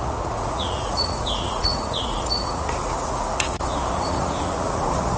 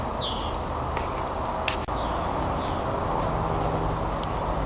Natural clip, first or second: second